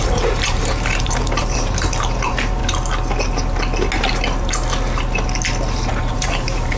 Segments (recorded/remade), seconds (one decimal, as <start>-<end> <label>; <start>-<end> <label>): 0.0-2.6 remade; 2.6-5.9 recorded; 5.9-6.8 remade